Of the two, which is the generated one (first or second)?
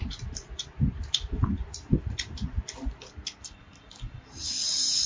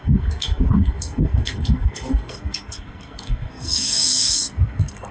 second